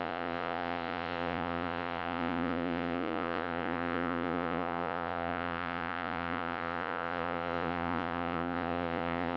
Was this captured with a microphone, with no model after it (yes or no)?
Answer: no